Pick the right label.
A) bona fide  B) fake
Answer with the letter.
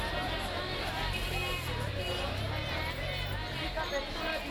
A